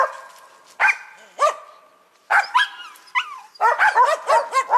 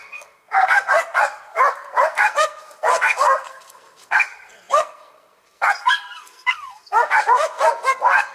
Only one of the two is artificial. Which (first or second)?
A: second